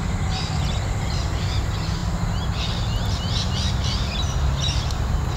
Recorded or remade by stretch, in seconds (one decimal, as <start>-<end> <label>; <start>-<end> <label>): 0.0-5.4 recorded